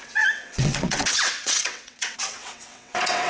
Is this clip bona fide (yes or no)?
no